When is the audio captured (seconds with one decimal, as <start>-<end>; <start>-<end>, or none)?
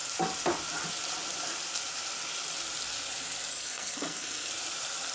0.0-3.5; 4.5-5.1